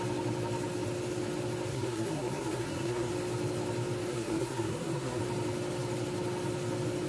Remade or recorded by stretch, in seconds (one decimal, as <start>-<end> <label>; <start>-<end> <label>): 0.0-1.7 recorded; 1.7-3.1 remade; 3.1-4.1 recorded; 4.1-5.2 remade; 5.2-7.1 recorded